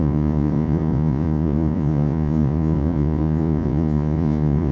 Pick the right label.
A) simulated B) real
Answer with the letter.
A